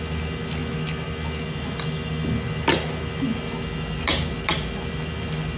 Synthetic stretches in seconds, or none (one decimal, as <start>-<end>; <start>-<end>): none